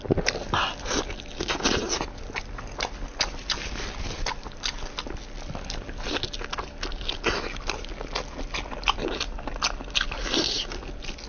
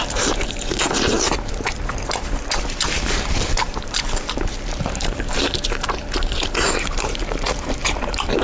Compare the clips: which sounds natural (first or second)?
first